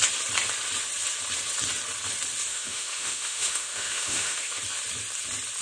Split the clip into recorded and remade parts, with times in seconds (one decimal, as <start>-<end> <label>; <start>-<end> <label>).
0.0-2.5 recorded; 2.5-4.6 remade; 4.6-5.6 recorded